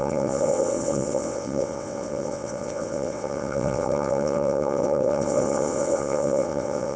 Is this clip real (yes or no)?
no